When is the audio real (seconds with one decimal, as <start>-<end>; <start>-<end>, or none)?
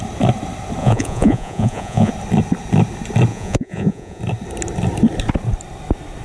0.0-0.8; 2.1-3.3; 4.2-6.2